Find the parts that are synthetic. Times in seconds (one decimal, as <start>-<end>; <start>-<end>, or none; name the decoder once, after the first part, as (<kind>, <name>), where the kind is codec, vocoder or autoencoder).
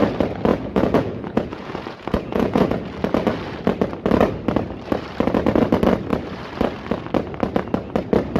0.5-2.8 (vocoder, Vocos)